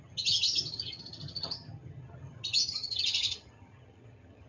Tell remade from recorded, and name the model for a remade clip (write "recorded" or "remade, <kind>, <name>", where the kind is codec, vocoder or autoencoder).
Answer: remade, vocoder, HiFi-GAN